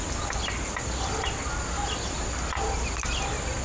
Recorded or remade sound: recorded